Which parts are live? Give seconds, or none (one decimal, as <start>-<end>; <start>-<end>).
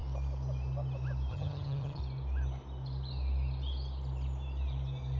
0.0-1.3; 2.0-5.2